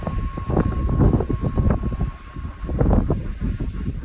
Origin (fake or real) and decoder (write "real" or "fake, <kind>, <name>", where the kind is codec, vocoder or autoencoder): real